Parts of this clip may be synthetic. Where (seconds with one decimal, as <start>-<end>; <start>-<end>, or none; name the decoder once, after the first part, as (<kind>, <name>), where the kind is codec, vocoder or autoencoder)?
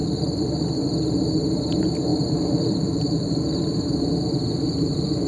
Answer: 0.0-0.6 (vocoder, BigVGAN v2); 2.1-5.3